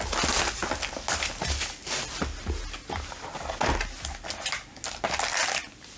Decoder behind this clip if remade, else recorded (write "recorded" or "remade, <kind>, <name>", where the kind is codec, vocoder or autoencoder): recorded